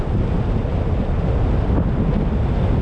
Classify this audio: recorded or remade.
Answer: recorded